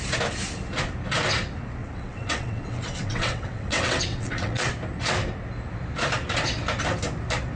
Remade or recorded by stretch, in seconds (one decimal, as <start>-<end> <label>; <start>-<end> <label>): 0.0-1.8 recorded; 1.8-4.7 remade; 4.7-7.6 recorded